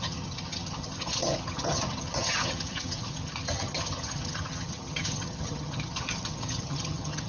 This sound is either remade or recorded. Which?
remade